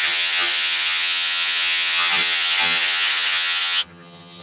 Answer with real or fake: fake